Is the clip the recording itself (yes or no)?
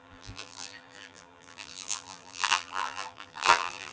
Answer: no